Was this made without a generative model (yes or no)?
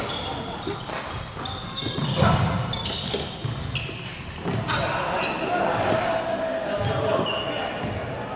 yes